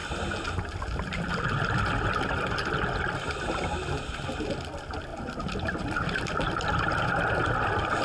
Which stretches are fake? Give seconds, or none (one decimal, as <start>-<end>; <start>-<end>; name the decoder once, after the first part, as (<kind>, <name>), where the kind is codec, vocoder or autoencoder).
5.1-7.5 (vocoder, BigVGAN v2)